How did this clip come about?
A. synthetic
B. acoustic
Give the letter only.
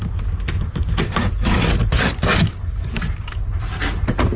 B